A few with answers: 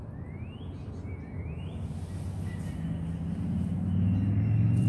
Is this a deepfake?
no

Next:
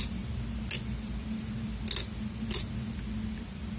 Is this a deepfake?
no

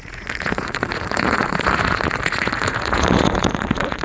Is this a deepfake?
yes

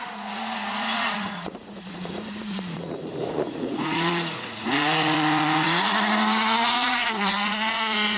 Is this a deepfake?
yes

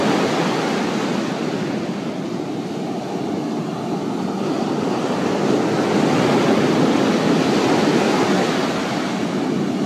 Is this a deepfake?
no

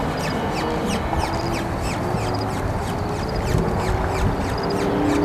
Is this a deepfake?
no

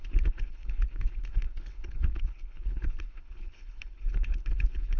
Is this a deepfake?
yes